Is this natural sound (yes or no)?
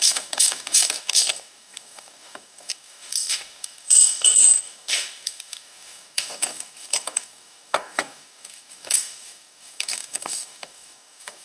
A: no